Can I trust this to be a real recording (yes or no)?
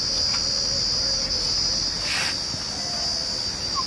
yes